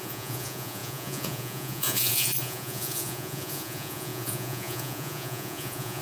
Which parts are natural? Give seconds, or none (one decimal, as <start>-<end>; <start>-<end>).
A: none